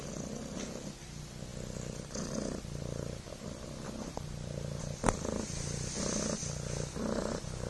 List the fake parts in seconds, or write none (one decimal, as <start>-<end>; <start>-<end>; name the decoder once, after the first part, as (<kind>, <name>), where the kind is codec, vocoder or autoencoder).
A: none